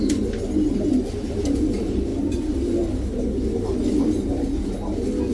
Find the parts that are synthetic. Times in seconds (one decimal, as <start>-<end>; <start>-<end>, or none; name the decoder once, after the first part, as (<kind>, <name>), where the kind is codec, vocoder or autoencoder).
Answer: none